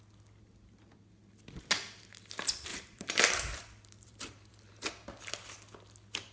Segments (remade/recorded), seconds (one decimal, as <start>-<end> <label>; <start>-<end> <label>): 0.0-2.7 recorded; 2.7-5.3 remade; 5.3-6.3 recorded